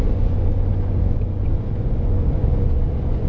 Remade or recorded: remade